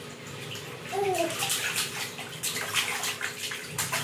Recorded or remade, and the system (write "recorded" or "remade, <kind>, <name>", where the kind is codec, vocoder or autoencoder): remade, vocoder, BigVGAN v2